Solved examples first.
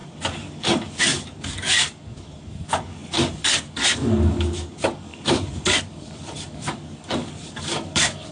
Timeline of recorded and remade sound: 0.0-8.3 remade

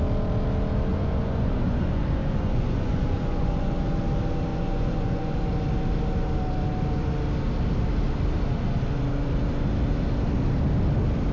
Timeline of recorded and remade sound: 0.0-0.9 recorded; 0.9-3.7 remade; 3.7-4.5 recorded; 4.5-5.4 remade; 5.4-11.3 recorded

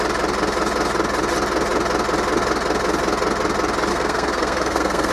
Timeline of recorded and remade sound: 0.0-3.9 recorded; 3.9-5.1 remade